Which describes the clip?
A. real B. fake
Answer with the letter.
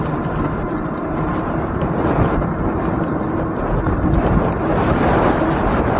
B